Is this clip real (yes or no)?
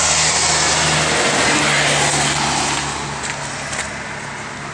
yes